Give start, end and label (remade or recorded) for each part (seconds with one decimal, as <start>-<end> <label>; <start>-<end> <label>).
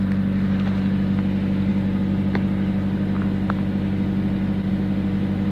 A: 0.0-5.5 recorded